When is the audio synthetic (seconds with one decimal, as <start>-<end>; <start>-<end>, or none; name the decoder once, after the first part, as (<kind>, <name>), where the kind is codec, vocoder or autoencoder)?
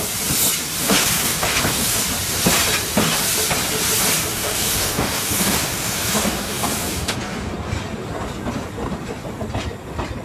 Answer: 0.8-2.0 (codec, DAC); 4.3-7.5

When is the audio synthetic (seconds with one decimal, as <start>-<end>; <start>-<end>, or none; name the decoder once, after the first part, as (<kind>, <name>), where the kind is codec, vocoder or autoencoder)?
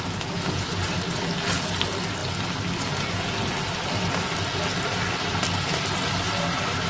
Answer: none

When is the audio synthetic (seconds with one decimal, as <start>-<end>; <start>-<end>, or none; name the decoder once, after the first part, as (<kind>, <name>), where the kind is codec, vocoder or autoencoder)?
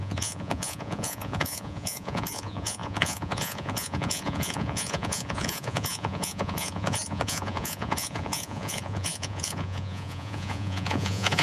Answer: 0.0-11.4 (vocoder, Vocos)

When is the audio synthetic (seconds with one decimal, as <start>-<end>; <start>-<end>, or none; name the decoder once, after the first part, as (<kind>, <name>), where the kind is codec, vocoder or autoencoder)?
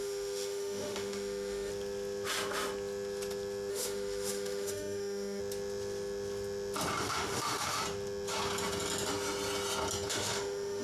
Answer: 0.0-1.7 (autoencoder, DAC-VAE); 3.7-5.4; 7.0-7.8; 10.1-10.8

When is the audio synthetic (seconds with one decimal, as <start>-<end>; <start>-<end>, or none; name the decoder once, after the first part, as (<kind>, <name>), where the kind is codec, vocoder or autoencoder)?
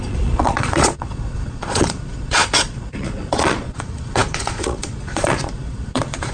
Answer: 0.0-6.3 (vocoder, Vocos)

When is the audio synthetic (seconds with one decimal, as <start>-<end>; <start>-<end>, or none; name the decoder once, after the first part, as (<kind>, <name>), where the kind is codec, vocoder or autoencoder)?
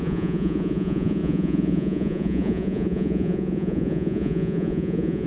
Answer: 0.0-5.3 (vocoder, Vocos)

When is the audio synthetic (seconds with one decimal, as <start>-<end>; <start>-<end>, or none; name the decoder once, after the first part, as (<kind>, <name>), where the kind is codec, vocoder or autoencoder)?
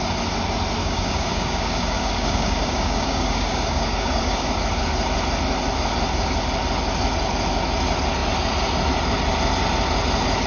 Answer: 0.8-4.6 (codec, DAC)